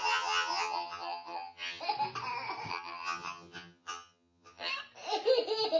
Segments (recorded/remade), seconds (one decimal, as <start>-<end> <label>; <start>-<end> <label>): 0.0-1.8 remade; 1.8-2.7 recorded; 2.7-4.7 remade; 4.7-5.8 recorded